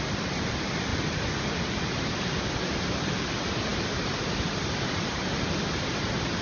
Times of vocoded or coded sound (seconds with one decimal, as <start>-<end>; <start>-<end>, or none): none